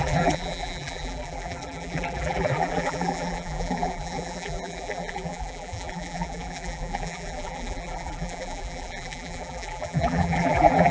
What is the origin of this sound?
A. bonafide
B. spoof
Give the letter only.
B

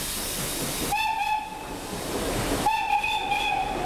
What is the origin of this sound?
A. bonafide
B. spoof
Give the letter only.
A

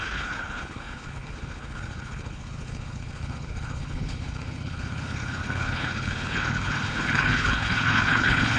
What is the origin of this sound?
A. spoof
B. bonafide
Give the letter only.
A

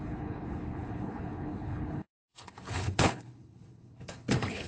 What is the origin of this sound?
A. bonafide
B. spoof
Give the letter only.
B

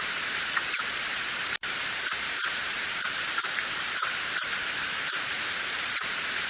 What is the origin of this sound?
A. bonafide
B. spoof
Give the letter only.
B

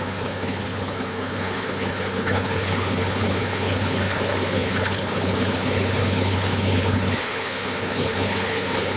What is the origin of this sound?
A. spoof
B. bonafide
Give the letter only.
A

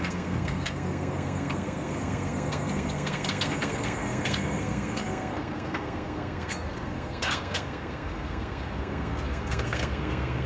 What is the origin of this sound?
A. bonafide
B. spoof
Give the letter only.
B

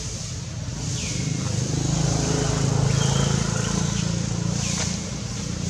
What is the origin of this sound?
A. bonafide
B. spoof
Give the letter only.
A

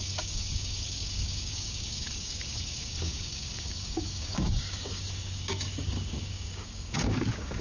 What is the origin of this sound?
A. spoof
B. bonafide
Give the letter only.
A